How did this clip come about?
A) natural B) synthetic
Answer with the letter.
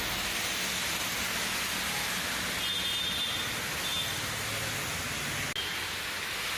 A